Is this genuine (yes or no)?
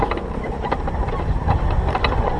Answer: yes